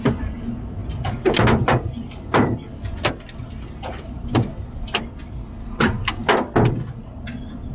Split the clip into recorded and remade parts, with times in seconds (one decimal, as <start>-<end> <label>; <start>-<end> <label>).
0.0-0.8 recorded; 0.8-5.0 remade; 5.0-7.7 recorded